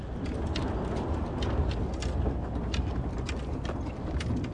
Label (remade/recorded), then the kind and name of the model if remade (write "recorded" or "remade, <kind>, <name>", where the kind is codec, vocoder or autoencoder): recorded